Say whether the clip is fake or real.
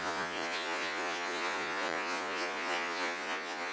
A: fake